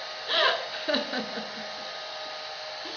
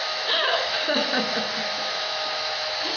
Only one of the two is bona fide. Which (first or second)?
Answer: first